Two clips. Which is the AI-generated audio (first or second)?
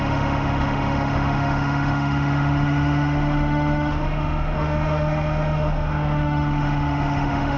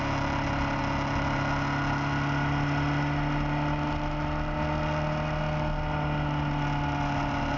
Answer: first